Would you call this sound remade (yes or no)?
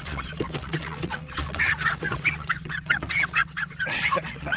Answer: yes